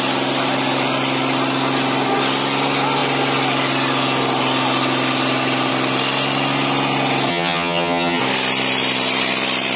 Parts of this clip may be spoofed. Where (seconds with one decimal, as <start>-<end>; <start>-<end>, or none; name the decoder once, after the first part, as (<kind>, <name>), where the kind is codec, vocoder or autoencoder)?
7.3-8.2 (vocoder, HiFi-GAN)